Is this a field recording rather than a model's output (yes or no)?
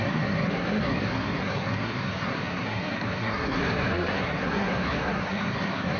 no